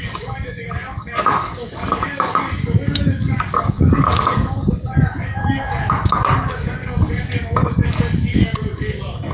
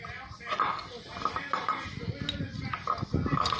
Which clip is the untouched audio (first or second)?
second